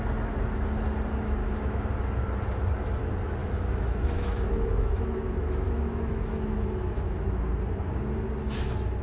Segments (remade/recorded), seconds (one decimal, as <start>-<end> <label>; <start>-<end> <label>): 0.0-1.4 recorded; 1.4-1.9 remade; 1.9-3.4 recorded; 3.4-7.3 remade; 7.3-9.0 recorded